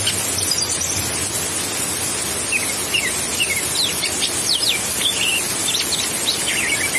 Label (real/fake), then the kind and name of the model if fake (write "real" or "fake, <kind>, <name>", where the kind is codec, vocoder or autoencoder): real